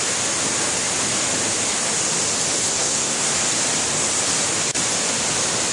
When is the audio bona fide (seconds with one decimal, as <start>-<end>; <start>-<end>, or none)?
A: 0.0-2.6; 3.4-5.7